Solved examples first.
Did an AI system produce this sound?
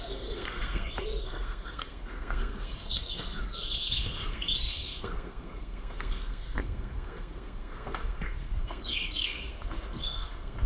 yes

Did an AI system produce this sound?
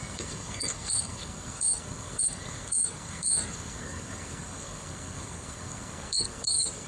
yes